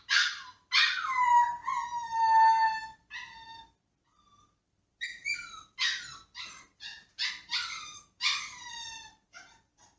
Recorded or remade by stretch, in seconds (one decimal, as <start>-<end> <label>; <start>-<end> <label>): 0.0-10.0 recorded

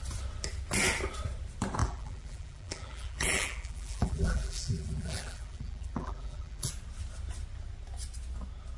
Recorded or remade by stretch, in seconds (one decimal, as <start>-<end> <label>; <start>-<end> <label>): 0.0-1.8 recorded; 1.8-6.7 remade; 6.7-8.8 recorded

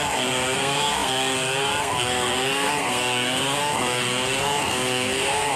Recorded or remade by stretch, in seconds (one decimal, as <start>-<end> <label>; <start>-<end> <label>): 0.0-5.6 remade